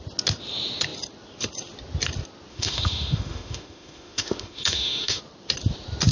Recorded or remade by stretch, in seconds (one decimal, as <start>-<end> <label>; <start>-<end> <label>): 0.0-2.5 recorded; 2.5-5.2 remade; 5.2-6.1 recorded